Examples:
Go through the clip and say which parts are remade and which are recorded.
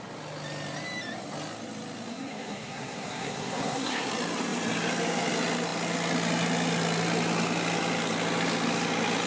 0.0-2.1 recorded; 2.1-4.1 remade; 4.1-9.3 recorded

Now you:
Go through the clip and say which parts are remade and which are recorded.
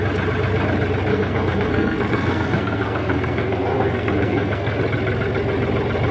0.0-1.1 recorded; 1.1-4.8 remade; 4.8-6.1 recorded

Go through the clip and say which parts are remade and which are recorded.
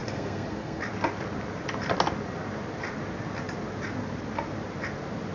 0.0-0.8 remade; 0.8-5.3 recorded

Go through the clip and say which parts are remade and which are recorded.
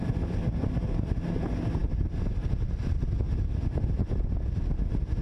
0.0-5.2 recorded